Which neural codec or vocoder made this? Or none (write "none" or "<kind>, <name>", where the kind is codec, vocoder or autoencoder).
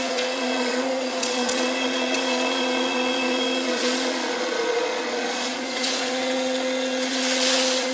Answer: vocoder, Vocos